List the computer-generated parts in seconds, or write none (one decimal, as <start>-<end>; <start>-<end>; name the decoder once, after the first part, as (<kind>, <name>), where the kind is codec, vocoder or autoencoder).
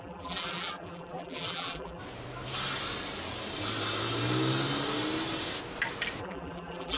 0.0-2.0 (vocoder, BigVGAN v2); 6.2-7.0